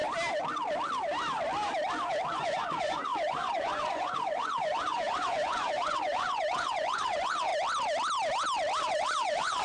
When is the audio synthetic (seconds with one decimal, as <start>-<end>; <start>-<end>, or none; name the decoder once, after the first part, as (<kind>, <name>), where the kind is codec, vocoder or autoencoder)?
2.3-7.5 (vocoder, Vocos); 8.8-9.6